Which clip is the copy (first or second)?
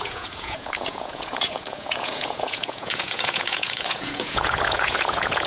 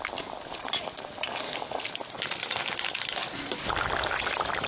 first